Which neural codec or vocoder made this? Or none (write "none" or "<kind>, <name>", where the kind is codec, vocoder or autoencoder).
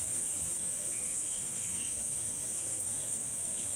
codec, SNAC